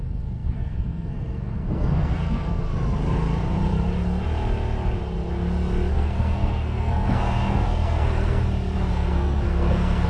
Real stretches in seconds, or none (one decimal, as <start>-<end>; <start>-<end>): 2.7-5.9; 8.4-8.9